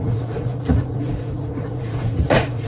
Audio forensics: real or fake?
fake